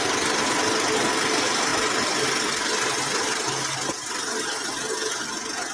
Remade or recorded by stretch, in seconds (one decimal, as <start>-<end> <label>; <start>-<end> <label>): 0.0-5.7 recorded